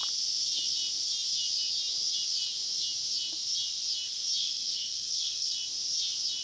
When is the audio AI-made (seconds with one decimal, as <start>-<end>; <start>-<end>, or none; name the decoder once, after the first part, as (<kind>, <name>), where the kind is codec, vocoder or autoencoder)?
4.4-5.5 (codec, SNAC)